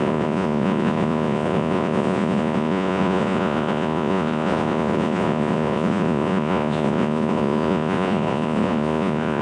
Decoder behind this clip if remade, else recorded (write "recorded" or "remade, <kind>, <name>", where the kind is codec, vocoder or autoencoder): remade, vocoder, Vocos